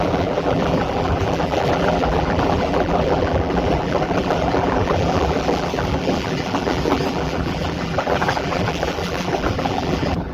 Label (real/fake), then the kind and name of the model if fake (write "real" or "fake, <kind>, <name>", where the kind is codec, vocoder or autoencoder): fake, vocoder, BigVGAN v2